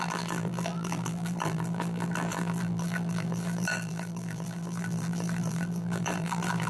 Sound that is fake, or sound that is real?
fake